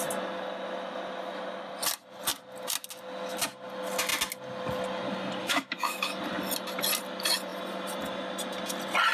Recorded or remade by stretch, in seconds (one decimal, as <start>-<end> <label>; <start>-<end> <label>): 0.0-5.4 recorded; 5.4-6.2 remade; 6.2-9.1 recorded